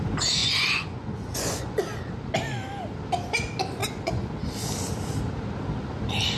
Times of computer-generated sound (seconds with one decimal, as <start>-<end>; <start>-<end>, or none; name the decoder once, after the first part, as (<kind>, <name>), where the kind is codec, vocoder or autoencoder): 0.4-1.8 (vocoder, Vocos); 3.8-4.3